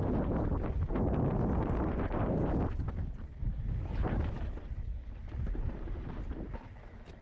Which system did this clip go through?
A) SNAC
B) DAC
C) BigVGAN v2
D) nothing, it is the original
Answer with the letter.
D